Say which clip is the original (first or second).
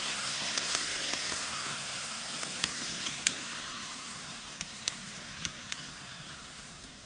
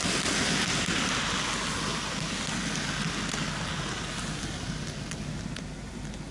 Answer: second